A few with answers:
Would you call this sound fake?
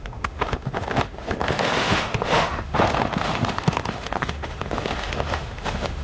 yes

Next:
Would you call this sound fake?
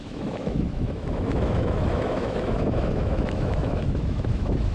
yes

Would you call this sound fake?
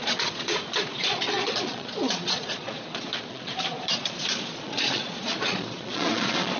yes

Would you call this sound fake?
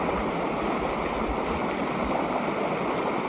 no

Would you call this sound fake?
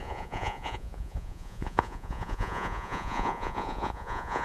yes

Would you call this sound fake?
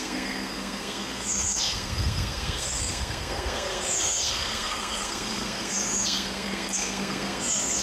yes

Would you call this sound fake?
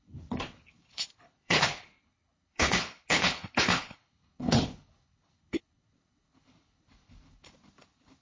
yes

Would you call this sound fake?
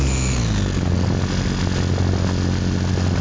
no